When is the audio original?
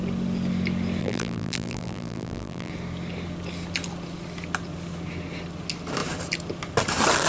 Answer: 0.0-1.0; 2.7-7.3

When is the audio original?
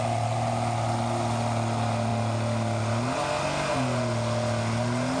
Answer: 0.0-5.2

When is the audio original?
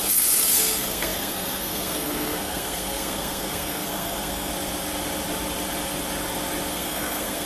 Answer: 4.5-6.7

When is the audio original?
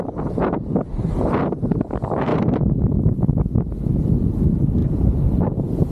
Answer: 0.0-4.8